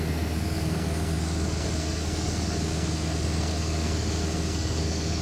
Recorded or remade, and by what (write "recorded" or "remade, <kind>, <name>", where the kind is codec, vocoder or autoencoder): remade, codec, SNAC